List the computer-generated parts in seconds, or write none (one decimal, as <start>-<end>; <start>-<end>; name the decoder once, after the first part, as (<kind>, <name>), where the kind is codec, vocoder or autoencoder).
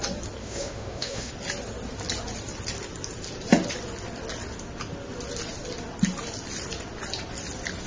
0.4-1.3 (autoencoder, DAC-VAE)